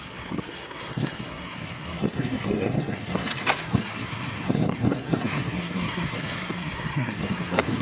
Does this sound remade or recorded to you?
remade